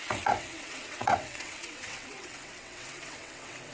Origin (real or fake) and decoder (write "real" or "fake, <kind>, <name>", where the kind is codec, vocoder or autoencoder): fake, vocoder, WaveNeXt